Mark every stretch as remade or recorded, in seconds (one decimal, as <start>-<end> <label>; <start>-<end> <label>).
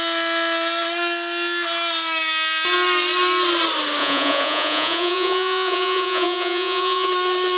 0.0-4.0 recorded; 4.0-7.1 remade; 7.1-7.6 recorded